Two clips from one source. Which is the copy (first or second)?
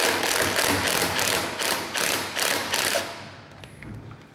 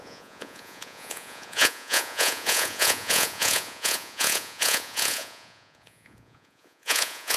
second